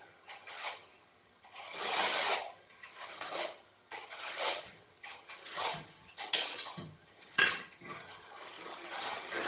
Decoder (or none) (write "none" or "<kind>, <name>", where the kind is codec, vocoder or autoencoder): vocoder, HiFi-GAN